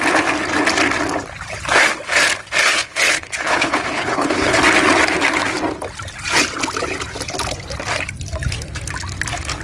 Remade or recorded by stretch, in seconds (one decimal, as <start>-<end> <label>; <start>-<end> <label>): 0.0-2.6 recorded; 2.6-4.6 remade; 4.6-9.6 recorded